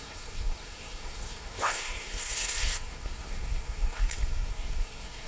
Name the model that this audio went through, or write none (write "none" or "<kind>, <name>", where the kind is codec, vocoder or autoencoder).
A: codec, SNAC